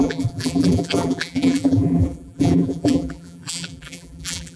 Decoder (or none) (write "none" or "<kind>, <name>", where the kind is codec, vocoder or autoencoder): vocoder, BigVGAN v2